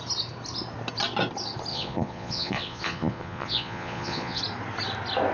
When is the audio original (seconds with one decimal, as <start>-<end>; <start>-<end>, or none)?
0.0-1.7; 4.4-5.3

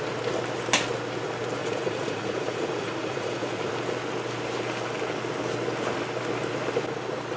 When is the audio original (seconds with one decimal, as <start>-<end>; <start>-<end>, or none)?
0.0-1.6; 3.7-7.4

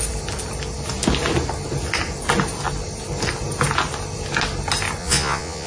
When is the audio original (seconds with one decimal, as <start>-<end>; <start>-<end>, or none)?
0.0-5.0